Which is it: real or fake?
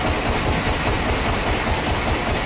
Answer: real